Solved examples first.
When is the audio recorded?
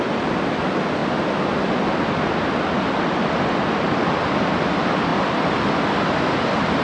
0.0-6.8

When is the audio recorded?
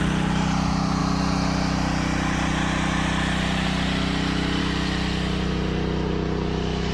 0.0-6.9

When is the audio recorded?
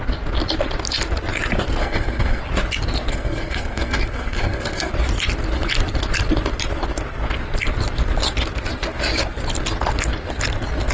0.0-1.8; 2.4-3.1; 4.9-10.9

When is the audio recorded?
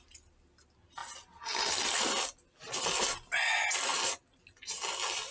0.0-5.3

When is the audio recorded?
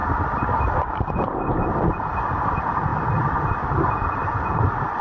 none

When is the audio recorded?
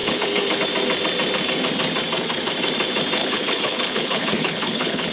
0.6-3.2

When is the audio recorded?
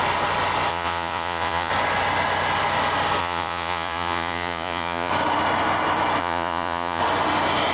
0.0-0.7; 1.7-3.2; 5.1-6.2; 7.0-7.7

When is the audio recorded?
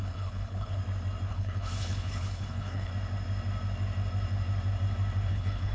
0.8-1.3; 2.9-5.3